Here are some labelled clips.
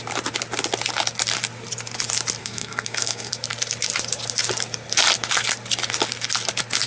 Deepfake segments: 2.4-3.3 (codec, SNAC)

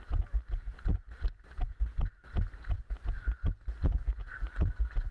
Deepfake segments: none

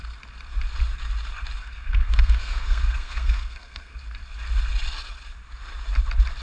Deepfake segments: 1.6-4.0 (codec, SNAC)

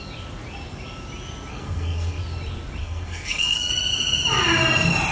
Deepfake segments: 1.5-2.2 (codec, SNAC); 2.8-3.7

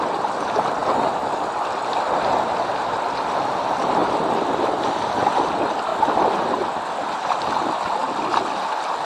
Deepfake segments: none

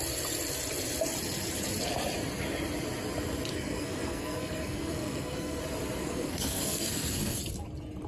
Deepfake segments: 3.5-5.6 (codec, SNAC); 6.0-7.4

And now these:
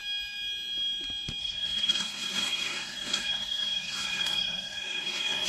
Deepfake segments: 1.4-5.5 (codec, SNAC)